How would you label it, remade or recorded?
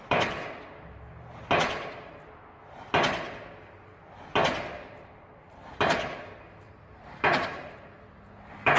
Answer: recorded